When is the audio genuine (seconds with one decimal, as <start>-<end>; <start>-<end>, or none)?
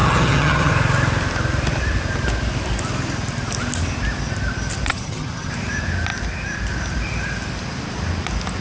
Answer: 0.7-4.9; 5.5-8.6